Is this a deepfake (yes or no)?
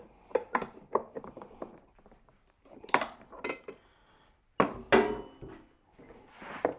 no